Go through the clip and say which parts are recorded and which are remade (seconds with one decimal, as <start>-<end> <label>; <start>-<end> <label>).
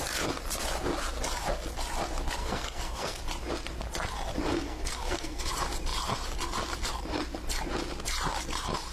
0.0-2.4 recorded; 2.4-3.2 remade; 3.2-4.5 recorded; 4.5-5.5 remade; 5.5-8.9 recorded